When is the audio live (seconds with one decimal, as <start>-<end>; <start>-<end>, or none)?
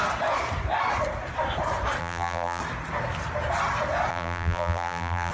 0.0-2.0; 2.6-4.1